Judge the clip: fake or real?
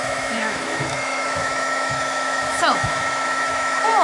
fake